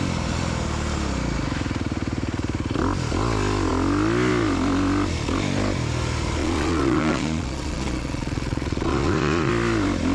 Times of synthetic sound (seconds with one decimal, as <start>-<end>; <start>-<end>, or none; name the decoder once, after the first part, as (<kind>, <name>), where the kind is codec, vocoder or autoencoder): 6.4-9.5 (vocoder, Vocos)